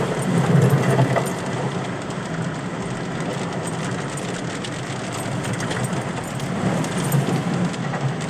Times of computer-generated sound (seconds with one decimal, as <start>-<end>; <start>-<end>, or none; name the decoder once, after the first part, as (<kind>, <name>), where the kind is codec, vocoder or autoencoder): none